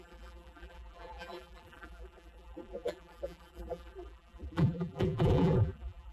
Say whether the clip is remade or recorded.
remade